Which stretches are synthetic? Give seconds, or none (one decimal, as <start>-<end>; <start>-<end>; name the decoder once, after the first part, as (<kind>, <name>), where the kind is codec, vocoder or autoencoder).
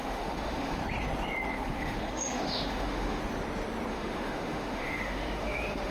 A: 0.0-0.8 (autoencoder, DAC-VAE); 1.5-3.2; 3.9-5.9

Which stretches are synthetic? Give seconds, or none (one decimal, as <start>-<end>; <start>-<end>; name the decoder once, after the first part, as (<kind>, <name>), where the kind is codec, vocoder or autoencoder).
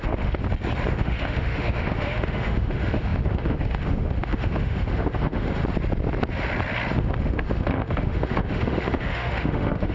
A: 0.0-0.4 (autoencoder, DAC-VAE); 0.9-5.6; 7.0-9.9